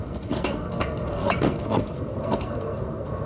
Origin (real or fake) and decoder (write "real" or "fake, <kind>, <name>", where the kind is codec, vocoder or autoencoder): fake, codec, SNAC